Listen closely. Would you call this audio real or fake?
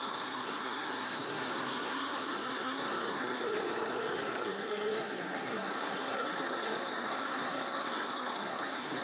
fake